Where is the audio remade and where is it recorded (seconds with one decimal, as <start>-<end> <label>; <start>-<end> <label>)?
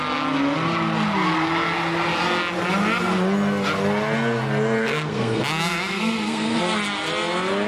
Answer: 0.0-4.8 recorded; 4.8-6.6 remade; 6.6-7.7 recorded